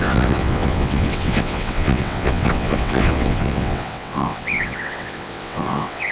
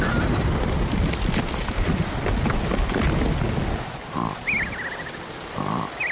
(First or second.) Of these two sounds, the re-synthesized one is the first